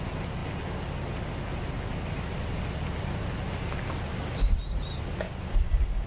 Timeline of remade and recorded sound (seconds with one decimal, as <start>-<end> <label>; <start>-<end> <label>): 0.0-6.1 recorded